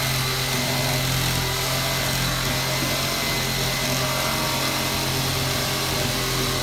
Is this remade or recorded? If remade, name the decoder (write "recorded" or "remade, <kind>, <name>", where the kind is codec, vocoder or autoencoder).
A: recorded